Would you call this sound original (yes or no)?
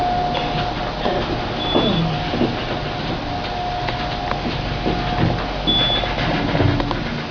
yes